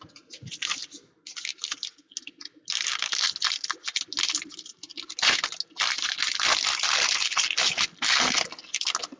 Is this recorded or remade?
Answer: recorded